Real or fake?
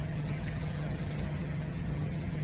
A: fake